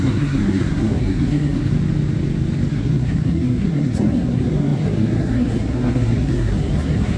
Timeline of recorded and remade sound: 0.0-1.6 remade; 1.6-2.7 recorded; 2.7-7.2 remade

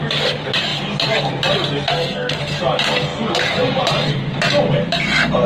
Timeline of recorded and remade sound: 0.0-1.9 recorded; 1.9-2.4 remade; 2.4-5.5 recorded

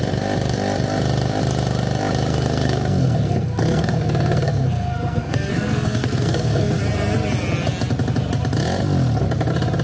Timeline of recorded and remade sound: 0.0-2.3 recorded; 2.3-6.8 remade; 6.8-9.8 recorded